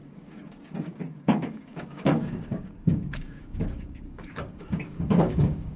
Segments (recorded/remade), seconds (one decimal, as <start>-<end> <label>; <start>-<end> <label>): 0.0-5.8 remade

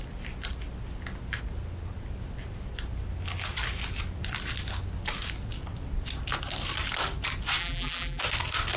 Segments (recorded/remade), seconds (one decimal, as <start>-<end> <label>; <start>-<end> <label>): 0.0-7.6 recorded; 7.6-8.2 remade; 8.2-8.8 recorded

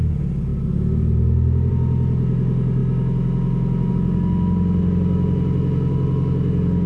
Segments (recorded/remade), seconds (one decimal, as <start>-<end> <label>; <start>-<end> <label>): 0.0-6.9 recorded